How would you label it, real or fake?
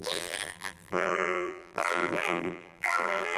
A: fake